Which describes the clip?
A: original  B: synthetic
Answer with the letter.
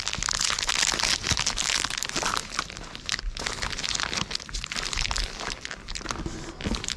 A